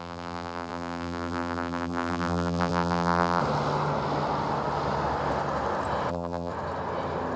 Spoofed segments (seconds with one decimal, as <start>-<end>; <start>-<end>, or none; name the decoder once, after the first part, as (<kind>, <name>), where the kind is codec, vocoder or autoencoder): 0.0-3.4 (vocoder, BigVGAN v2); 6.1-6.5

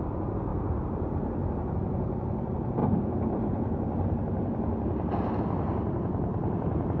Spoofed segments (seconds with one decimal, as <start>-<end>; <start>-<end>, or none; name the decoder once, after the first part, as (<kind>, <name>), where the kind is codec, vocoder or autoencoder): 0.5-1.1 (vocoder, BigVGAN v2); 6.3-7.0

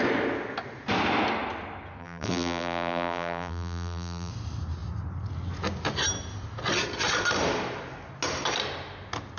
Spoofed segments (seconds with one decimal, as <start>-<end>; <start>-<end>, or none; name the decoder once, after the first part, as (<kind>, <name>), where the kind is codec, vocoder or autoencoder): 2.0-4.3 (vocoder, BigVGAN v2)

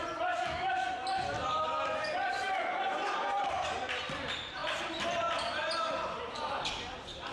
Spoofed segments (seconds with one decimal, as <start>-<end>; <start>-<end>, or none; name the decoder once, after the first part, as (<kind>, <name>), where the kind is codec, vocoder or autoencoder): 0.0-7.3 (vocoder, BigVGAN v2)

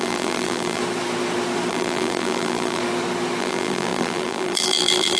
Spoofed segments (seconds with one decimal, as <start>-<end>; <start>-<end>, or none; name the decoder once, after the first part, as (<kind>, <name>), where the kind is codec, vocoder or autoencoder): 0.0-0.8 (vocoder, BigVGAN v2); 1.7-2.8; 3.4-5.2

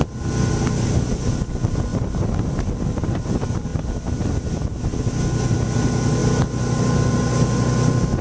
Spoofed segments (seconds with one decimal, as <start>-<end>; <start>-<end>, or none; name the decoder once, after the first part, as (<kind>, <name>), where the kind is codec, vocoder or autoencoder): 1.9-2.5 (vocoder, BigVGAN v2)

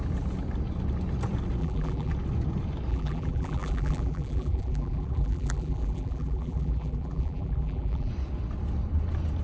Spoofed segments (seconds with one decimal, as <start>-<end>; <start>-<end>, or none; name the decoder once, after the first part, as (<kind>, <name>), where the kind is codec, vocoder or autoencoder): 1.6-2.1 (vocoder, BigVGAN v2); 2.9-8.1

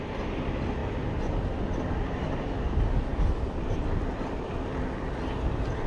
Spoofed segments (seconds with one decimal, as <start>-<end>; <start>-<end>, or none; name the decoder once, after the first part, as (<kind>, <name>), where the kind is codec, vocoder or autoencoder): none